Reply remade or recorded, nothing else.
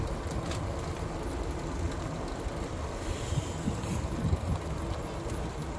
recorded